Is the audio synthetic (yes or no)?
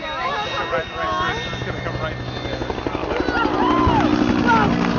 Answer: no